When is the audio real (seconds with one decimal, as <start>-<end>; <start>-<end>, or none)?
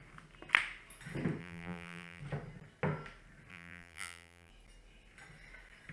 0.0-1.4; 2.2-3.5; 4.5-5.9